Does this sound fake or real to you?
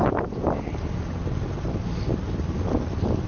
real